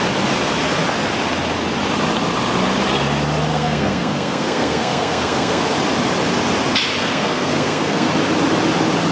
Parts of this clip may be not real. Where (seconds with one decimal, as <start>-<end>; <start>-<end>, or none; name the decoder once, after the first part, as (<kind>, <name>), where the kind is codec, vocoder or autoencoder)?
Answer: 3.5-5.6 (codec, SNAC); 7.0-8.1